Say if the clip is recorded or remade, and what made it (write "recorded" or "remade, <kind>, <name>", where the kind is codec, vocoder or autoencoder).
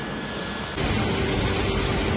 recorded